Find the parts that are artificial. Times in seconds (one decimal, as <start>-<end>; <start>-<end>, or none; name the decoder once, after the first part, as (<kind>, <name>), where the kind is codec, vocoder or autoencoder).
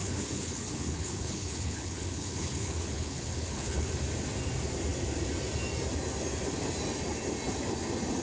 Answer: 0.0-3.9 (codec, HILCodec)